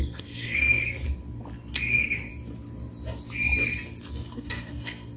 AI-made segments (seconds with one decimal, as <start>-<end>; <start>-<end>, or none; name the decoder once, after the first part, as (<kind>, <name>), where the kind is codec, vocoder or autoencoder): 0.0-1.0 (codec, SNAC); 1.7-2.3; 4.3-5.2

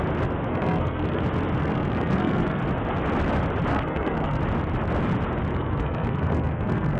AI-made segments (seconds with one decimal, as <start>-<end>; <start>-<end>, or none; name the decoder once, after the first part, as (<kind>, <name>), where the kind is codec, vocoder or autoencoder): 0.5-1.2 (codec, SNAC); 1.6-2.6; 3.7-4.4; 5.5-7.0